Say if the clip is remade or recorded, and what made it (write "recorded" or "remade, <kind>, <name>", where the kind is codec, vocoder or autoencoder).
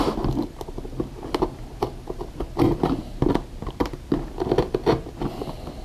recorded